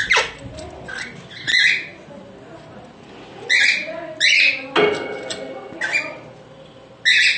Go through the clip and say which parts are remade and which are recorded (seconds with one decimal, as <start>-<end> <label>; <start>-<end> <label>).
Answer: 0.0-7.4 recorded